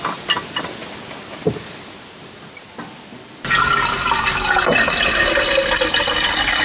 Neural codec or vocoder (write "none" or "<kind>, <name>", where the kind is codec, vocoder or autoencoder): none